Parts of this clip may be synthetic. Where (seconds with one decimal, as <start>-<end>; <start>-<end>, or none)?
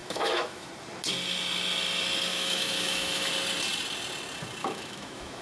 0.0-0.7; 2.3-3.3; 4.6-5.4